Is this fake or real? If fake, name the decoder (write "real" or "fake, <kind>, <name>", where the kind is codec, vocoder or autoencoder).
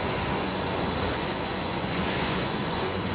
fake, vocoder, Vocos